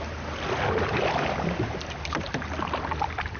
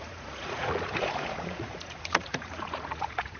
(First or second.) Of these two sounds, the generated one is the second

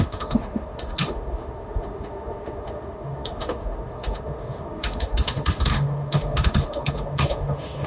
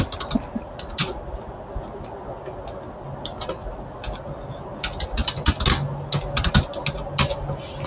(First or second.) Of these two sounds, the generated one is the first